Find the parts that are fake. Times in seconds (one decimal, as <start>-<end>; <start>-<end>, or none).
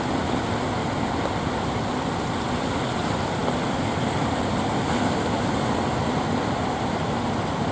none